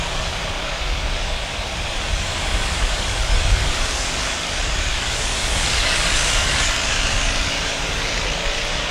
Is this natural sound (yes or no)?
no